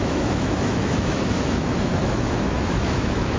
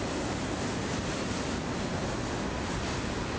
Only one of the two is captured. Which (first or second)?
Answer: second